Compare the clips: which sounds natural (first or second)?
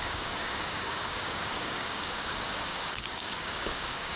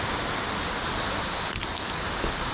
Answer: second